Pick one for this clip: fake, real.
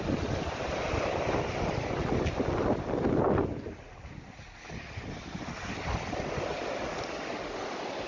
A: real